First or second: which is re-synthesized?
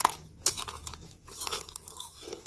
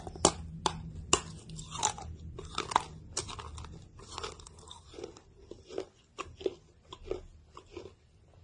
first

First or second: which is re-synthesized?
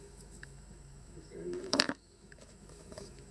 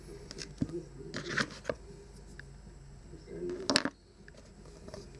first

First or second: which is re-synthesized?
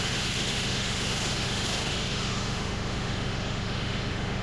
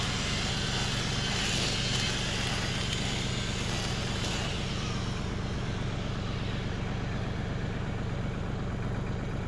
first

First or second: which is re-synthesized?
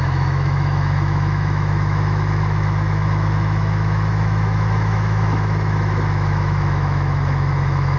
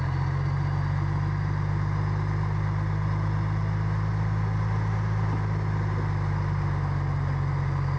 first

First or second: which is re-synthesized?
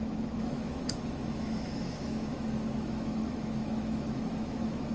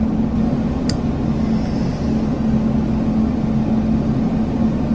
first